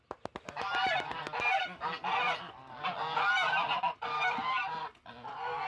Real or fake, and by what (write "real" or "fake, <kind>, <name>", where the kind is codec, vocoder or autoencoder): real